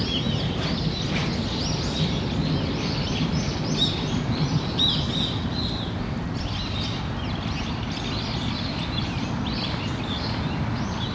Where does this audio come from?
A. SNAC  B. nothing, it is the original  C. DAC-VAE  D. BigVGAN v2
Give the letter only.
B